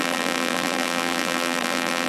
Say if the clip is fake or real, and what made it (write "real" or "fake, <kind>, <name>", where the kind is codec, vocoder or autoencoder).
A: fake, vocoder, BigVGAN v2